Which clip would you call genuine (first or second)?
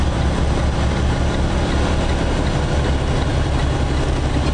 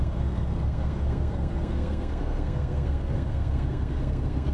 first